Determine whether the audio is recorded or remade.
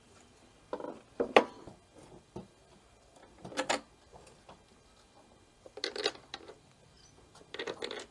recorded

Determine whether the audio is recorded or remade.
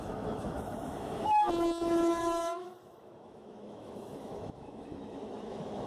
remade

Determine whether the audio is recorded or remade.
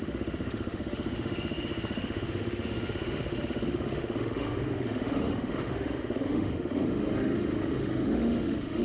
remade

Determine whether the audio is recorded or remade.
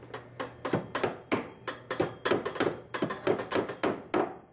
recorded